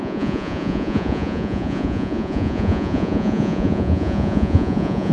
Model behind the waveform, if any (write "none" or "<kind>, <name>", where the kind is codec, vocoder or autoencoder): vocoder, Vocos